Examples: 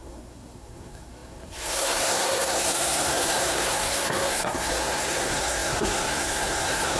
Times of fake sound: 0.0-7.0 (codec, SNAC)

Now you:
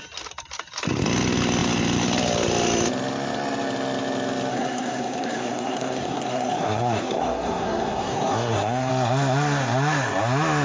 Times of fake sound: 4.5-8.9 (codec, SNAC)